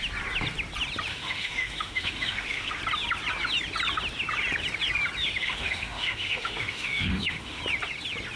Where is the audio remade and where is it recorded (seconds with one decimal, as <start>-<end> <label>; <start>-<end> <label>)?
0.0-1.1 recorded; 1.1-2.8 remade; 2.8-5.4 recorded; 5.4-7.6 remade; 7.6-8.4 recorded